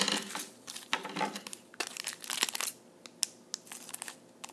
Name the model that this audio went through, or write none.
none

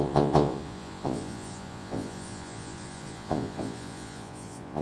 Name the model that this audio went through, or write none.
vocoder, Vocos